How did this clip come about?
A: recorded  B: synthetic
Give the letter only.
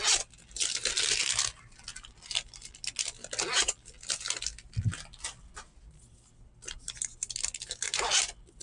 A